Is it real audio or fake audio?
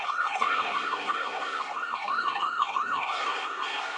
fake